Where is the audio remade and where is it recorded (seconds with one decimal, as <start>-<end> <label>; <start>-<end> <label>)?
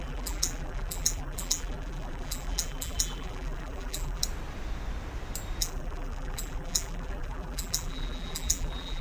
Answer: 0.0-4.2 remade; 4.2-5.6 recorded; 5.6-9.0 remade